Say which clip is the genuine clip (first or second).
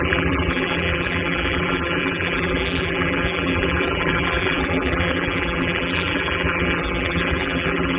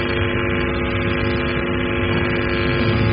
second